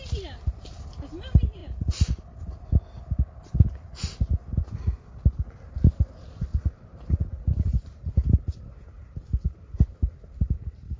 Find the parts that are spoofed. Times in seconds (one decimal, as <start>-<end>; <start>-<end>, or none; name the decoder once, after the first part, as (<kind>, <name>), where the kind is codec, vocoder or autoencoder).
6.5-8.6 (vocoder, BigVGAN v2)